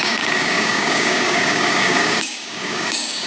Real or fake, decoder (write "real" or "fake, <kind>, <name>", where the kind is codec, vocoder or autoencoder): fake, codec, DAC